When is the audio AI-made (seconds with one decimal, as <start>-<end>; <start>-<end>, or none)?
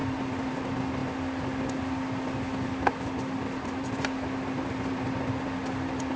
none